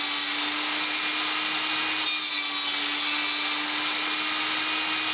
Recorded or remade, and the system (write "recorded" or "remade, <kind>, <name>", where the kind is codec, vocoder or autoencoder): recorded